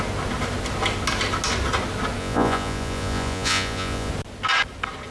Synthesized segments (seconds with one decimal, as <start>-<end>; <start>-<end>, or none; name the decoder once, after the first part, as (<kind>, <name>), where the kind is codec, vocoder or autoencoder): 2.2-4.1 (vocoder, Vocos)